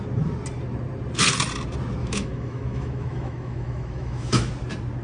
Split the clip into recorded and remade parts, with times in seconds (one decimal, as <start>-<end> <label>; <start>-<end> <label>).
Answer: 0.0-2.0 recorded; 2.0-4.5 remade; 4.5-5.0 recorded